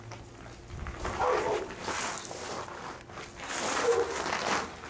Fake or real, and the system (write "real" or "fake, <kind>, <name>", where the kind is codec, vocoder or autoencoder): real